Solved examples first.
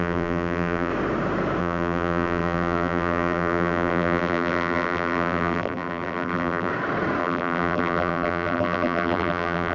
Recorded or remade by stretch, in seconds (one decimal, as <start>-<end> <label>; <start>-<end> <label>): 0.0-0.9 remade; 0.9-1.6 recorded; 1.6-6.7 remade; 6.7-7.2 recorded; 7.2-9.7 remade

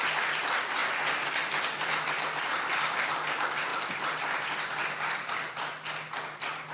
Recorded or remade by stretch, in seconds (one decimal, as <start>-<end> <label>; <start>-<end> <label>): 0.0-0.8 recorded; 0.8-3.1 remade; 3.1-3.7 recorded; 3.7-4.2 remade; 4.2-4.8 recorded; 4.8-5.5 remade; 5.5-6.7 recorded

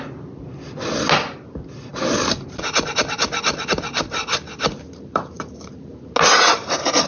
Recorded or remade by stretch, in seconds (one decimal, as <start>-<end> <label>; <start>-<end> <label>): 0.0-1.9 recorded; 1.9-5.9 remade; 5.9-7.1 recorded

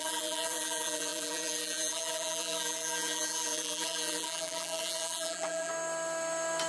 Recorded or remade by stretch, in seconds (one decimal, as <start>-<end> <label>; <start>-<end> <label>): 0.0-5.7 remade; 5.7-6.7 recorded

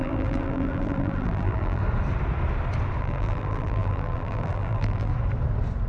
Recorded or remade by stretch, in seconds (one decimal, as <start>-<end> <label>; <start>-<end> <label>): 0.0-1.8 remade; 1.8-3.0 recorded; 3.0-5.1 remade; 5.1-5.9 recorded